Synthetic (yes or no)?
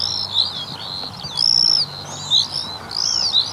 no